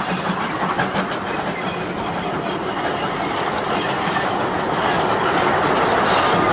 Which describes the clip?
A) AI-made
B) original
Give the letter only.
B